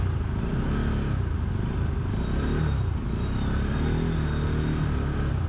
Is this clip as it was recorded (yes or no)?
yes